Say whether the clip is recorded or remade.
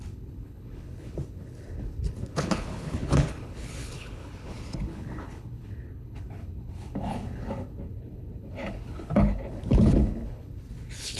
remade